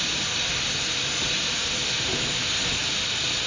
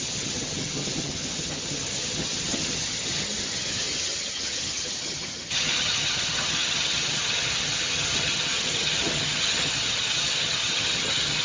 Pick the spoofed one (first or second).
second